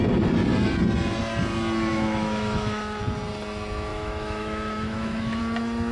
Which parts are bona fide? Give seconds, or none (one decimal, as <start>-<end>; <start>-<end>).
0.0-1.9; 3.0-3.9; 5.4-5.9